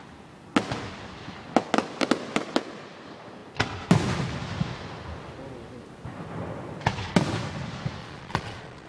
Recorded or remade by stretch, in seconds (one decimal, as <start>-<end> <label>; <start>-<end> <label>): 0.0-8.0 recorded; 8.0-8.9 remade